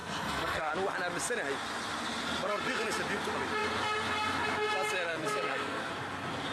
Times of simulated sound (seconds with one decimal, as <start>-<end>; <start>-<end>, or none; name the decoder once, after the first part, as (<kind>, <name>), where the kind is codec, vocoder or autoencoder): 0.0-0.7 (codec, SNAC); 5.1-5.9